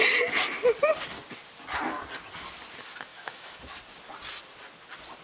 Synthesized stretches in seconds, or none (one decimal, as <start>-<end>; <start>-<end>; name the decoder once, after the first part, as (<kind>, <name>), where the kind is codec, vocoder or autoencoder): 3.1-3.6 (autoencoder, DAC-VAE)